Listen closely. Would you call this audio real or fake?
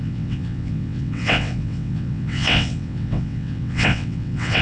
fake